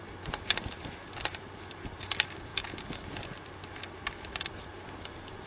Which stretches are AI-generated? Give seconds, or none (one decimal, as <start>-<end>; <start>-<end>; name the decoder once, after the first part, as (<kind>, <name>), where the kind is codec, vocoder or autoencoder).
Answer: none